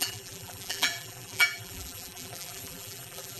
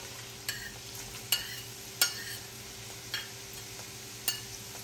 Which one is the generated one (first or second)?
first